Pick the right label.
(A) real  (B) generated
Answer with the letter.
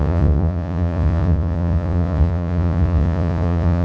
B